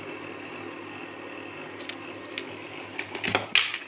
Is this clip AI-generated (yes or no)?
no